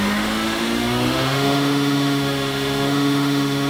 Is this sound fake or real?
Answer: fake